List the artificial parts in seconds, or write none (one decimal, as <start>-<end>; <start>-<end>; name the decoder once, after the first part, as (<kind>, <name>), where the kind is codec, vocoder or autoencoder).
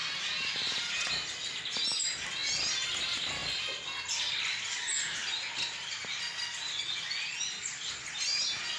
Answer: 0.0-1.1 (vocoder, BigVGAN v2)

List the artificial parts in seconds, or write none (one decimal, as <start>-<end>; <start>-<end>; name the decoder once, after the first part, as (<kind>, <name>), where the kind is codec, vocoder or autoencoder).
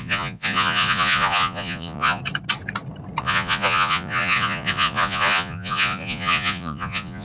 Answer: 0.0-2.2 (vocoder, Vocos); 3.2-7.2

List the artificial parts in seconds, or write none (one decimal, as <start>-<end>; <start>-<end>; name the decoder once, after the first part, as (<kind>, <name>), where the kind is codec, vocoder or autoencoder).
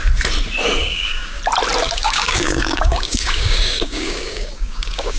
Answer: 0.8-1.4 (codec, DAC); 1.8-5.2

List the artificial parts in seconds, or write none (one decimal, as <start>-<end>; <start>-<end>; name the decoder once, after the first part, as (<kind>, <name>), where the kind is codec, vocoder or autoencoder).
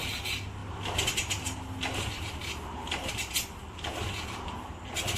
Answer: none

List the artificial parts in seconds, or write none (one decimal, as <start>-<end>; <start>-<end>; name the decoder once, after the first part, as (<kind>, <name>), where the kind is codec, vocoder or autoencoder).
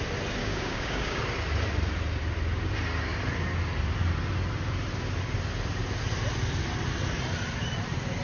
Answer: 0.4-1.2 (codec, DAC)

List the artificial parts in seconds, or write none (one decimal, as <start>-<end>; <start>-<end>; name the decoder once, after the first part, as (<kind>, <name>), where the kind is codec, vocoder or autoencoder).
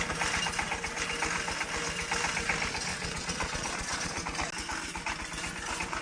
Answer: 2.9-4.2 (vocoder, Vocos)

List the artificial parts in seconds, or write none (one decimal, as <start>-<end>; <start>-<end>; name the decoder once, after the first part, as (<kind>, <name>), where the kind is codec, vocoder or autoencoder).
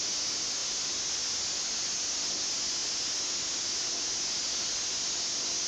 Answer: none